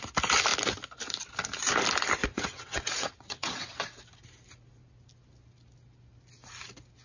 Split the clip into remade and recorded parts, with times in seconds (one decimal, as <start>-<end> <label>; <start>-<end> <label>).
0.0-2.2 recorded; 2.2-3.8 remade; 3.8-7.0 recorded